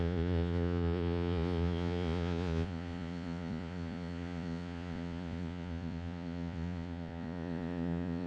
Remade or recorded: remade